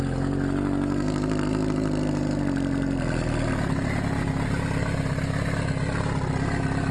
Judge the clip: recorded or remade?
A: recorded